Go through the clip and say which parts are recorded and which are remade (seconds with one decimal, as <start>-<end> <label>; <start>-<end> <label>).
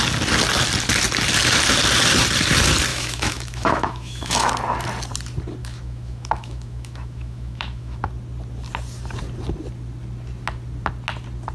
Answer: 0.0-2.9 recorded; 2.9-4.5 remade; 4.5-5.6 recorded; 5.6-8.0 remade; 8.0-11.5 recorded